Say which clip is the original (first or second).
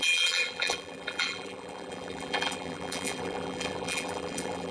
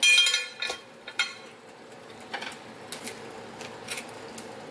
second